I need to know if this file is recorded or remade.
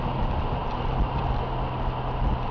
recorded